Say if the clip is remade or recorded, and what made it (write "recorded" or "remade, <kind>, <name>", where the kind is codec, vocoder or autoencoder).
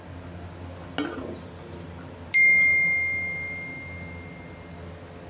recorded